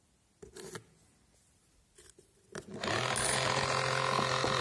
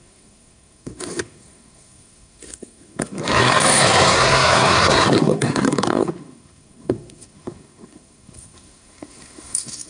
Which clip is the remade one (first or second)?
second